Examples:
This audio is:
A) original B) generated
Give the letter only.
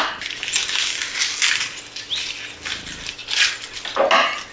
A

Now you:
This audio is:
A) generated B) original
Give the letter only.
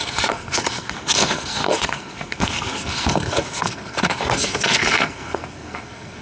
A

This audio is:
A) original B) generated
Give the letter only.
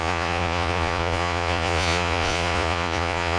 B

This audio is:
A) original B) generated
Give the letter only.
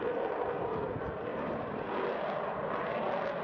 A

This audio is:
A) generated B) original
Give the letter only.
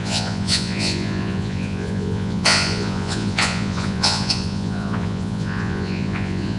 A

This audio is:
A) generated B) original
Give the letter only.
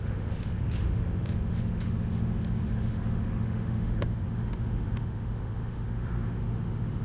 A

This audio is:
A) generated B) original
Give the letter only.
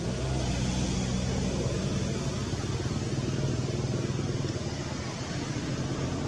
B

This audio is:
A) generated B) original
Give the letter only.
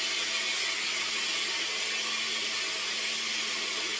B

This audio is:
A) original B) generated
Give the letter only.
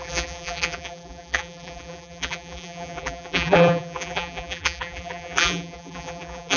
B